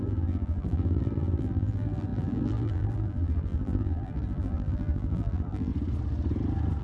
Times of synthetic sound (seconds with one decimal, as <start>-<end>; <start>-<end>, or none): 0.0-5.7